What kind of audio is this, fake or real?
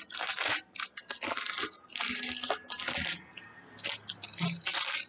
real